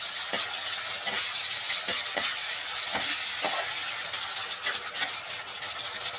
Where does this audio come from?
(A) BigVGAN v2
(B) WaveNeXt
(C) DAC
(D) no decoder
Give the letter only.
D